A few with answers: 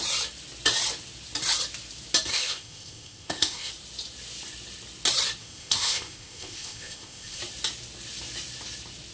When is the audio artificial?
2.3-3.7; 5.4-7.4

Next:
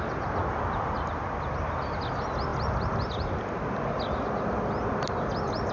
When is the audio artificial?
none

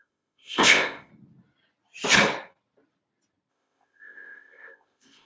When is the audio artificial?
0.0-1.1; 3.5-5.3

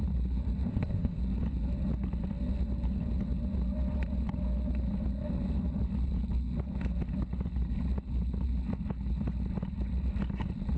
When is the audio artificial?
0.7-1.2

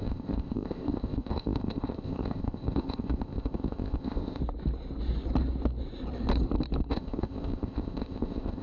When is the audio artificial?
0.0-4.4; 6.9-8.6

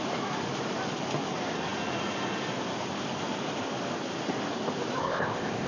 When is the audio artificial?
5.0-5.7

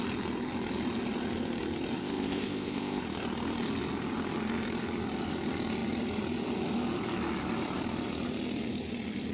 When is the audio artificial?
2.0-3.0

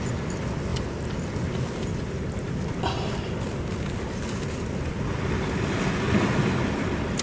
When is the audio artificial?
none